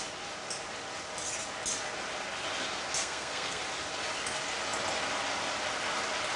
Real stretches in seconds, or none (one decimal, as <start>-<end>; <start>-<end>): 0.0-3.0; 3.6-6.4